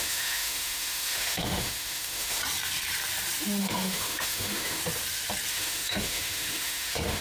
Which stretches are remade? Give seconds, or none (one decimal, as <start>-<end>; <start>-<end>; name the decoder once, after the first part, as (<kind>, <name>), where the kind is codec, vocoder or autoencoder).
0.0-2.4 (autoencoder, DAC-VAE); 3.6-4.8; 5.5-7.2